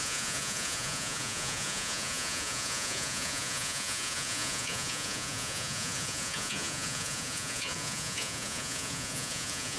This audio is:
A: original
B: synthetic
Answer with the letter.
B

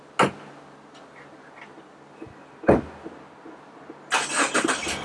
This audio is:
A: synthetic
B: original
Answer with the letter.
B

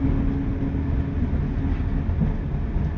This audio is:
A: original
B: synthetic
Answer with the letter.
A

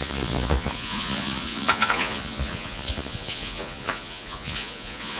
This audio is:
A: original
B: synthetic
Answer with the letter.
B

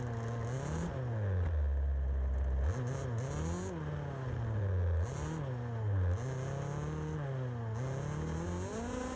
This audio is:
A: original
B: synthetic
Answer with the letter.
A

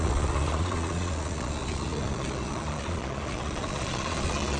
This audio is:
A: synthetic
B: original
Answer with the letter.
A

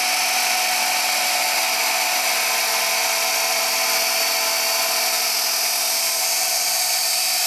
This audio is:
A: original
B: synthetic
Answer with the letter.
A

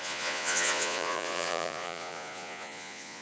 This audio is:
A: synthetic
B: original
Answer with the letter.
A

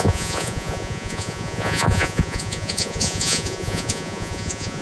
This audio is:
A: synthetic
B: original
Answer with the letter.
A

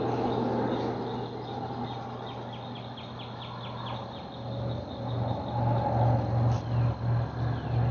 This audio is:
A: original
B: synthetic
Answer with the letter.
A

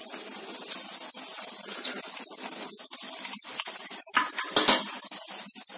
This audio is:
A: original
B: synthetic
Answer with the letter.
A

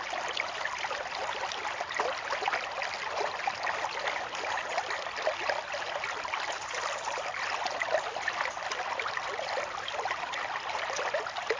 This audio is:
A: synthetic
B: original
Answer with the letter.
B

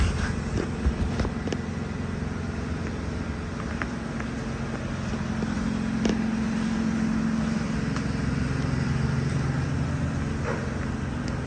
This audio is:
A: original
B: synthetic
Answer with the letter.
A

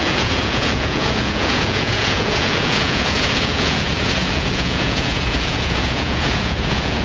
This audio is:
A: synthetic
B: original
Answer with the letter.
A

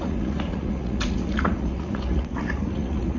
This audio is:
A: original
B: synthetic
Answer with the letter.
B